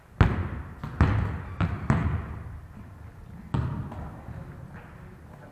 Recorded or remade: recorded